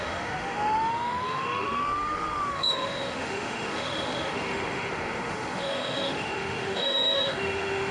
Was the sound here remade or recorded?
remade